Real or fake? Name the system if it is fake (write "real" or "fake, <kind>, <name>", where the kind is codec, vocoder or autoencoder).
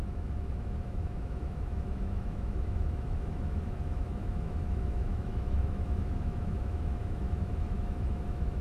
fake, autoencoder, DAC-VAE